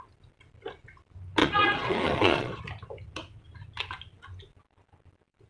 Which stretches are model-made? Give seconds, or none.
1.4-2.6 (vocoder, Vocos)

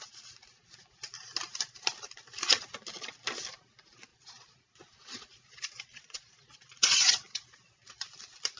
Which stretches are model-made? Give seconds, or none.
4.1-8.1 (vocoder, Vocos)

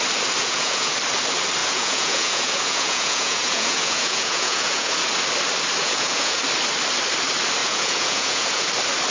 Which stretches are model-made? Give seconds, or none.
0.4-0.9 (vocoder, Vocos); 1.6-5.1; 5.8-6.4; 7.6-8.7